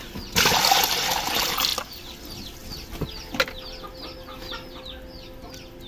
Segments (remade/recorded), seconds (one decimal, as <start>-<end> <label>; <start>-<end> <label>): 0.0-5.9 recorded